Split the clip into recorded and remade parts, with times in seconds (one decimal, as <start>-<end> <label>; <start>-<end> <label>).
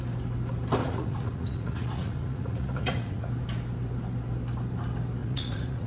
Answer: 0.0-0.8 recorded; 0.8-3.3 remade; 3.3-5.2 recorded; 5.2-5.9 remade